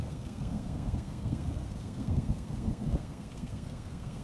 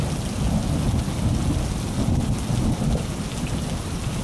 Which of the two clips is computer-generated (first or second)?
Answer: first